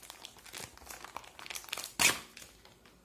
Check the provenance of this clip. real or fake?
real